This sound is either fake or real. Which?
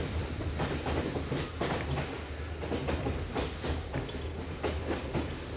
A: real